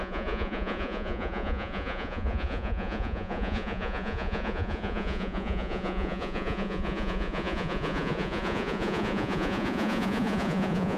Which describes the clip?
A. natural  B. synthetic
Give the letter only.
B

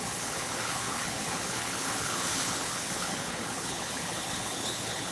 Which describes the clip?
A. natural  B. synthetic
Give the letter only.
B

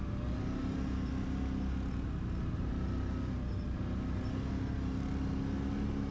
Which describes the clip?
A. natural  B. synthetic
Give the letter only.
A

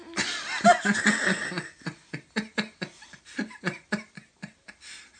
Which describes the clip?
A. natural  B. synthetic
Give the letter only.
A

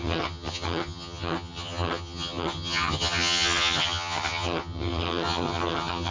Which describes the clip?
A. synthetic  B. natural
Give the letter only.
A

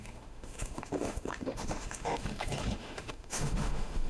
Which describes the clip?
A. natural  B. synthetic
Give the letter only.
B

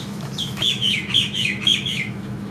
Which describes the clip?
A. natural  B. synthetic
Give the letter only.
B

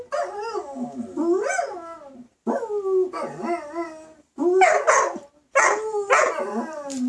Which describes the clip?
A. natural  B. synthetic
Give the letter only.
A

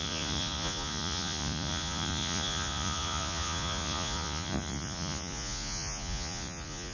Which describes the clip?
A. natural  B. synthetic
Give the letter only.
B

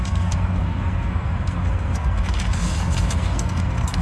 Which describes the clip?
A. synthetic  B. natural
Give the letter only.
A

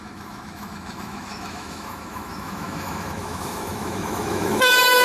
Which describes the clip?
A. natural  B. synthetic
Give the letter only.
B